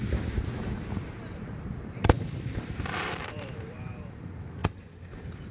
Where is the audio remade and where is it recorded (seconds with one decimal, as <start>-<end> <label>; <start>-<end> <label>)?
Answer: 0.0-4.6 remade; 4.6-5.1 recorded; 5.1-5.5 remade